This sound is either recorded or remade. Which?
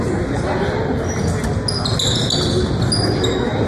recorded